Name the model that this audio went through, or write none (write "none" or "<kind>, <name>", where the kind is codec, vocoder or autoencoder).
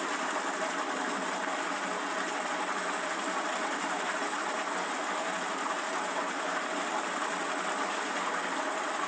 none